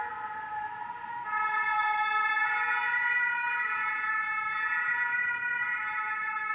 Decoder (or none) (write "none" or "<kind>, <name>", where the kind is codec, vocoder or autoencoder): none